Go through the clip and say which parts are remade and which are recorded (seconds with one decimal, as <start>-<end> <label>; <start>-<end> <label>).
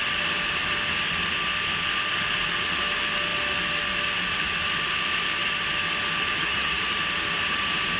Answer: 0.0-6.3 recorded; 6.3-6.8 remade; 6.8-8.0 recorded